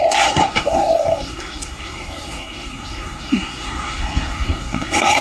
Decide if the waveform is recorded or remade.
remade